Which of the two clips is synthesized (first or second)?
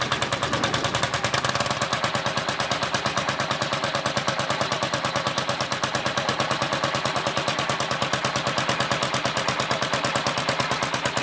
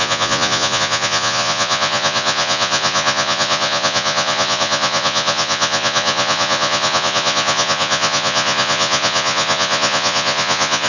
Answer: second